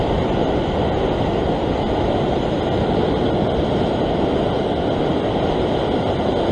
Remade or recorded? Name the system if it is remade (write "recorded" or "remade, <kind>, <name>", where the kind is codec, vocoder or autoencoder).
recorded